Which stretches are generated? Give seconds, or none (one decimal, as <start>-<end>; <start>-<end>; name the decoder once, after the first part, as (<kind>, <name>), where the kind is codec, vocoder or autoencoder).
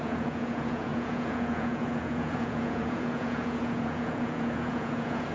0.0-5.3 (vocoder, Vocos)